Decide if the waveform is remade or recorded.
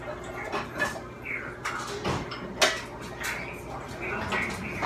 recorded